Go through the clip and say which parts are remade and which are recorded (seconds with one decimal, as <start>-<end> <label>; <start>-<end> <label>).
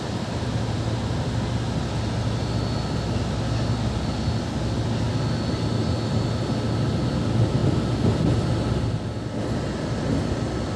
0.0-10.8 recorded